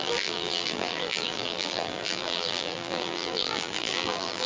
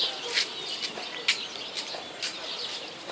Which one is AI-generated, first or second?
first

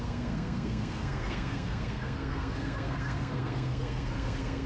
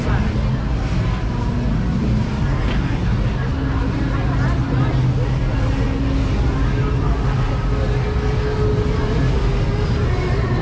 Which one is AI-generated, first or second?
first